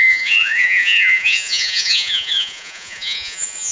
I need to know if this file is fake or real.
fake